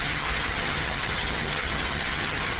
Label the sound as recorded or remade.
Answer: remade